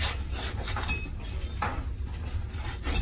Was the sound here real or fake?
real